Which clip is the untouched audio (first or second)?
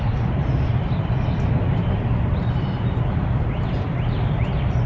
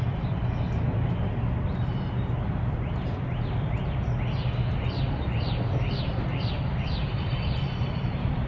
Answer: second